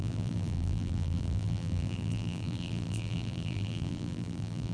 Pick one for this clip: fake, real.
fake